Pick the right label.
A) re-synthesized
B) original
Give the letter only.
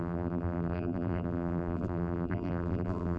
A